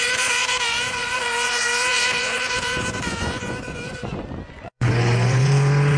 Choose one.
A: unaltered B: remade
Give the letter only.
B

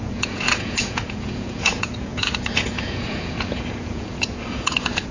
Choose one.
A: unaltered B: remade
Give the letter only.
B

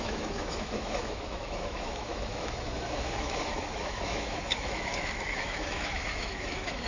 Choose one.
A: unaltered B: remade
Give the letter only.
B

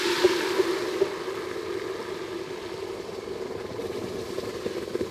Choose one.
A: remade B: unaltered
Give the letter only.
B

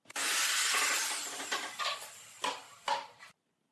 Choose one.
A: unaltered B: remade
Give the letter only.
A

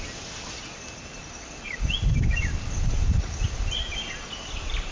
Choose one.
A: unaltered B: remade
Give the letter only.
A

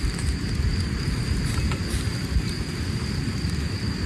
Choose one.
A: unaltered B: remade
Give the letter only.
A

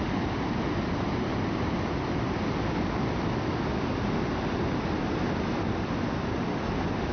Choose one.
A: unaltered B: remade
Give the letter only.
A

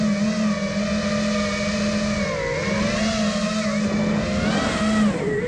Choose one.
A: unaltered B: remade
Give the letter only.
A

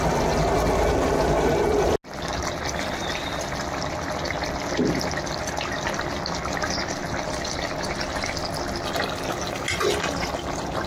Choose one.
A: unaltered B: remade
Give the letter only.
A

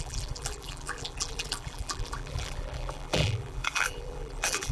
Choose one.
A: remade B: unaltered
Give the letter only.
A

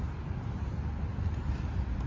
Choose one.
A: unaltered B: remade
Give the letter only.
A